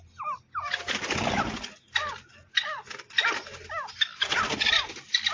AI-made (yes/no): no